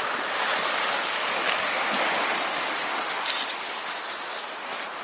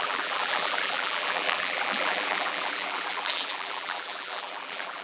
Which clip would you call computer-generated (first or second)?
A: second